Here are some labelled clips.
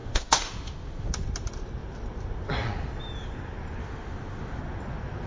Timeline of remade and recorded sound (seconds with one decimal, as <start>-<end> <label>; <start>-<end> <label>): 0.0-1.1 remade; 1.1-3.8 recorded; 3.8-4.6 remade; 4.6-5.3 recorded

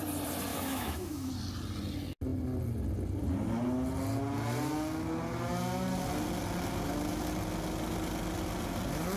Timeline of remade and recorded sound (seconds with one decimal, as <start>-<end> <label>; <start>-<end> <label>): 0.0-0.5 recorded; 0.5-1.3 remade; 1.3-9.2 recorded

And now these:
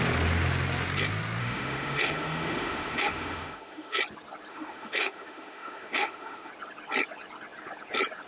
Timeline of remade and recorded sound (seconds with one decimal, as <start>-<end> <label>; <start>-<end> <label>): 0.0-1.4 recorded; 1.4-4.0 remade; 4.0-4.5 recorded; 4.5-6.5 remade; 6.5-8.3 recorded

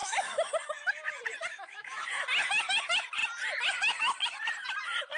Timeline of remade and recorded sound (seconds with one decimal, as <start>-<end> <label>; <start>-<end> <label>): 0.0-0.5 remade; 0.5-1.5 recorded; 1.5-2.0 remade; 2.0-5.2 recorded